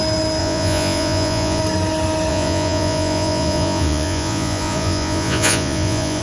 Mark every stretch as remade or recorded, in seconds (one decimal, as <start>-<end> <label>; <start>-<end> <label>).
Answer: 0.0-0.4 recorded; 0.4-1.6 remade; 1.6-2.3 recorded; 2.3-6.2 remade